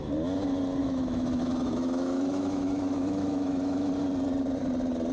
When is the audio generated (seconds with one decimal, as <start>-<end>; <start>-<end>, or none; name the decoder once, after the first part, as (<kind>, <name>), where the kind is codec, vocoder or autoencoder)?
0.8-3.9 (autoencoder, DAC-VAE)